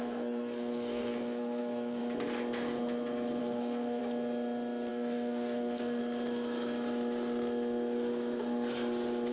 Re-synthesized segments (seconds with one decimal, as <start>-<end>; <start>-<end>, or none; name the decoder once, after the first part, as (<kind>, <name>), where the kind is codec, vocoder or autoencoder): 0.0-2.0 (codec, SNAC); 3.4-4.0; 4.9-6.0